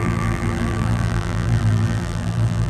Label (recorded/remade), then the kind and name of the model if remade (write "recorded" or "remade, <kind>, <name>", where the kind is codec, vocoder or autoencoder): remade, vocoder, BigVGAN v2